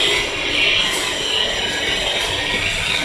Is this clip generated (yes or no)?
no